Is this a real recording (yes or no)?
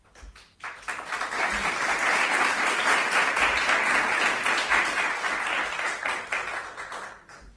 yes